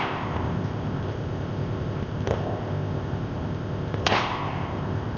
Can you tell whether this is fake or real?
fake